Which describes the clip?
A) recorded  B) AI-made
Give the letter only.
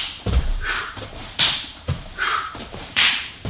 B